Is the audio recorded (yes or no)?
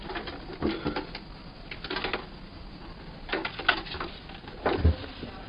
yes